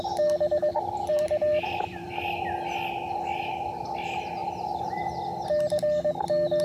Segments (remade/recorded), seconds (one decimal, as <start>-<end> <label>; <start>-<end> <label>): 0.0-0.7 recorded; 0.7-2.1 remade; 2.1-4.4 recorded; 4.4-5.0 remade; 5.0-6.6 recorded